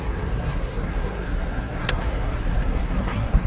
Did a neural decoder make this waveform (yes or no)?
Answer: yes